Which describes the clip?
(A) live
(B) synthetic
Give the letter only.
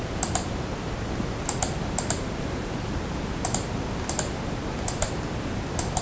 A